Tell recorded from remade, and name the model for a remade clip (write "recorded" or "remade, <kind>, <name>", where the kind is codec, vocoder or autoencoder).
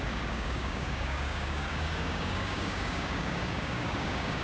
remade, codec, DAC